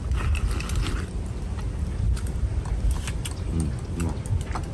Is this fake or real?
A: real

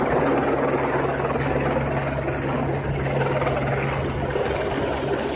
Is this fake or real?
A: real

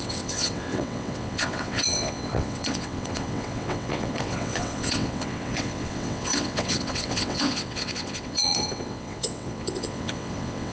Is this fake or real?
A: fake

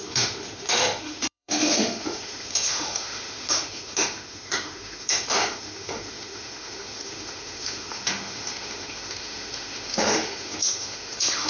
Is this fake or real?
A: fake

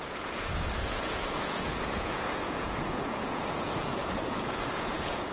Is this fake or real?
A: fake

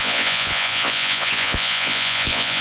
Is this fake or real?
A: fake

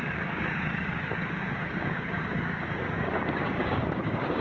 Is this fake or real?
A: fake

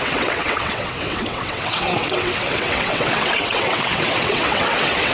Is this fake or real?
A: fake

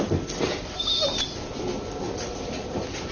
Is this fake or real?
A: real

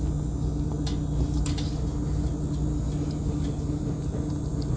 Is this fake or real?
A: real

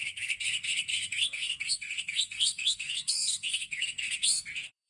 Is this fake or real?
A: fake